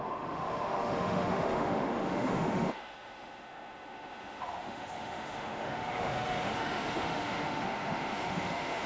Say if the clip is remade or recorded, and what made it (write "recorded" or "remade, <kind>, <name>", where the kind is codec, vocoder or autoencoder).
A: remade, autoencoder, DAC-VAE